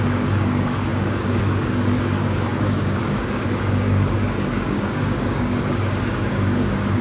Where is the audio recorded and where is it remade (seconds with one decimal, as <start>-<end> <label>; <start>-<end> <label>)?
0.0-7.0 remade